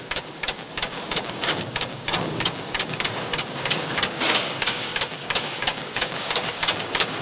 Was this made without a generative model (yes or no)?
no